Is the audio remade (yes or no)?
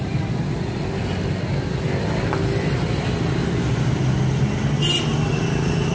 no